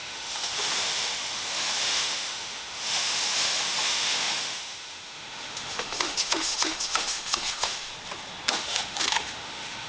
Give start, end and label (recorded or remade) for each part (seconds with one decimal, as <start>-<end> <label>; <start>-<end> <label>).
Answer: 0.0-7.9 remade; 7.9-8.6 recorded; 8.6-9.9 remade